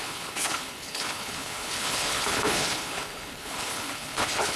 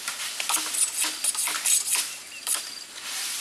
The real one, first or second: second